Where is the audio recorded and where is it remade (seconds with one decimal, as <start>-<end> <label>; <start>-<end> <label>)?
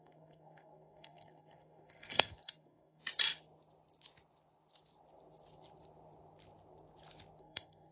0.0-3.0 remade; 3.0-7.4 recorded; 7.4-7.9 remade